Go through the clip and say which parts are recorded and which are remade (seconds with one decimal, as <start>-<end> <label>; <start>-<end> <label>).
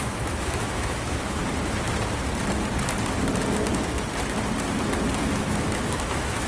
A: 0.0-1.4 remade; 1.4-5.3 recorded; 5.3-6.5 remade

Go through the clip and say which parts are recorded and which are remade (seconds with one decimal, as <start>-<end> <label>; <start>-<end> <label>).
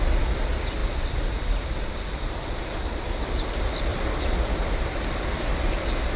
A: 0.0-6.2 recorded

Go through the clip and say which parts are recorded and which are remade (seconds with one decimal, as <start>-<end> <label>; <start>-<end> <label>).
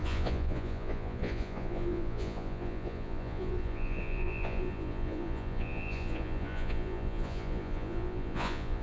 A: 0.0-8.8 remade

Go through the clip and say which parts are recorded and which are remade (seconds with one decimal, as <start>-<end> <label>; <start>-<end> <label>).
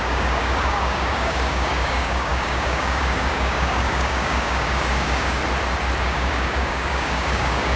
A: 0.0-5.4 remade; 5.4-6.0 recorded; 6.0-7.8 remade